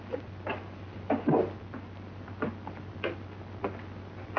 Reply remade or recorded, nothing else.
recorded